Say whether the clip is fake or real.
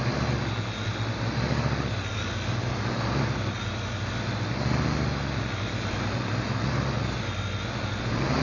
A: real